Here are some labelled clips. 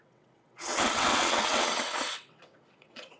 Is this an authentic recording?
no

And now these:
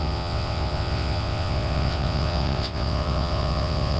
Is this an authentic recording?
no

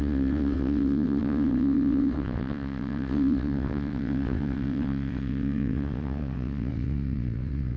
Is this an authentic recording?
no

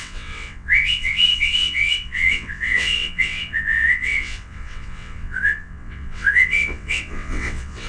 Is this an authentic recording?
no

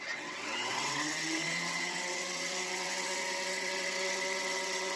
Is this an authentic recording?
no